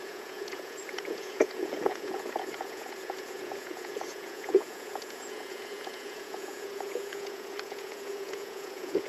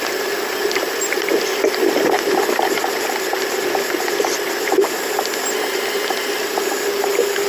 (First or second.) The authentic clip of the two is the second